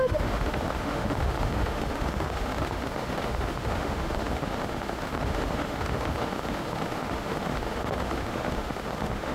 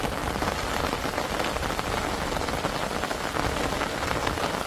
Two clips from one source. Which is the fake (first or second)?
first